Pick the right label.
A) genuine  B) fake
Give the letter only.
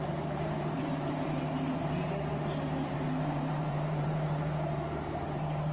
B